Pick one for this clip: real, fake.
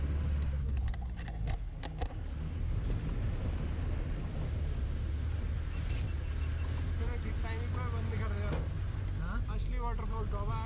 real